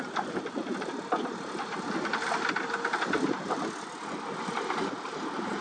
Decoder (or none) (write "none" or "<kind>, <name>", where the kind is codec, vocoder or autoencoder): none